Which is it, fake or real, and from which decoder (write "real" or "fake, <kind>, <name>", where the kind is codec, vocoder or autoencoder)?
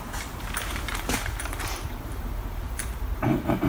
fake, vocoder, BigVGAN v2